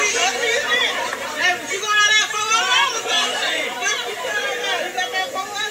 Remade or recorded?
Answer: remade